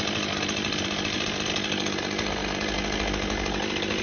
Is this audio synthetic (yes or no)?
no